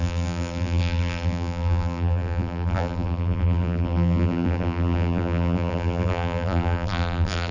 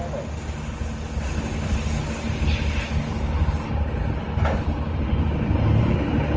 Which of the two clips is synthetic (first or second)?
first